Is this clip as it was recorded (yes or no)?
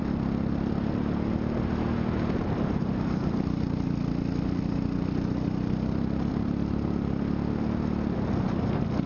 yes